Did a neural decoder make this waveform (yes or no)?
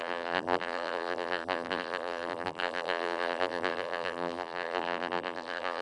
yes